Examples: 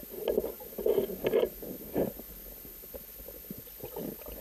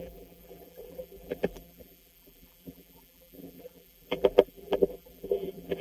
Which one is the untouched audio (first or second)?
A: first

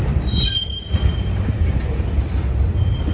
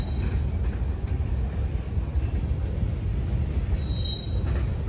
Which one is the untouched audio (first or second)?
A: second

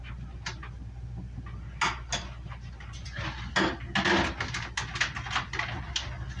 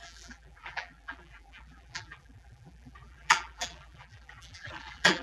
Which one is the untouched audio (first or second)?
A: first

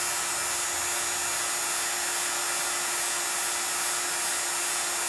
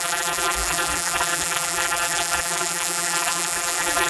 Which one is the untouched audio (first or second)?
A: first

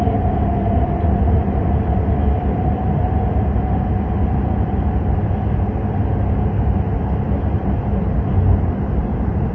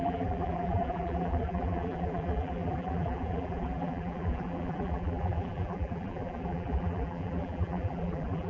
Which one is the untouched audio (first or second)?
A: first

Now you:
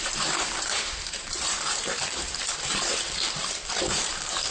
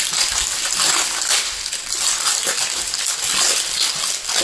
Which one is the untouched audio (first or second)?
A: second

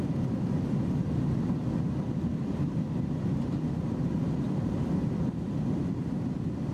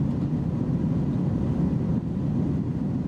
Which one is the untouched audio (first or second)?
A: second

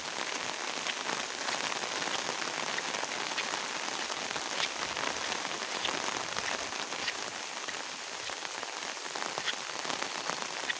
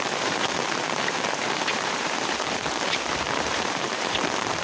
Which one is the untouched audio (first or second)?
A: first